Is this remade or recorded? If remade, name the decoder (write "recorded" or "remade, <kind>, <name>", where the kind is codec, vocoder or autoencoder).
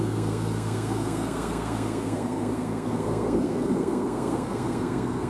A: remade, codec, SNAC